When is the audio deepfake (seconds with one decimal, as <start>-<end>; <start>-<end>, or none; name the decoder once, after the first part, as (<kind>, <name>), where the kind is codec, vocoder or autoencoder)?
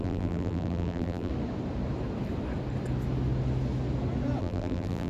0.0-1.3 (vocoder, BigVGAN v2); 4.4-5.1